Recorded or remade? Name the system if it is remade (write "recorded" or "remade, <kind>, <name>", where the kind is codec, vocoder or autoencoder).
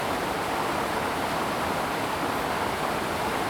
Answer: recorded